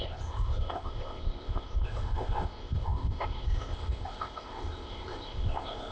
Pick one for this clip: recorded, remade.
remade